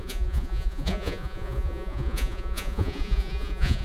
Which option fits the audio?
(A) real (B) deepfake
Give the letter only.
B